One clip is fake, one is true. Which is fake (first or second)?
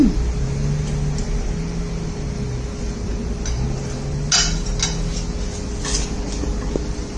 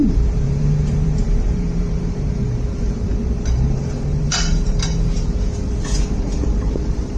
second